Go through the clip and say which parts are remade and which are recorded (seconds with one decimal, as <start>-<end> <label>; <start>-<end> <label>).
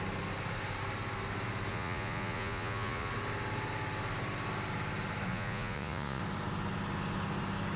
0.0-1.7 recorded; 1.7-3.1 remade; 3.1-5.3 recorded; 5.3-6.2 remade; 6.2-7.8 recorded